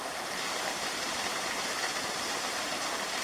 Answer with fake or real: fake